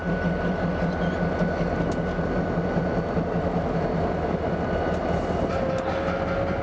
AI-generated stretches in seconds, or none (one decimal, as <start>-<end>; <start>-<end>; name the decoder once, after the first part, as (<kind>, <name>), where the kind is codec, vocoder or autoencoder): none